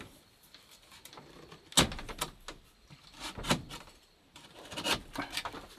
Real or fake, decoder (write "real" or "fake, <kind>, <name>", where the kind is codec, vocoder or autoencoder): real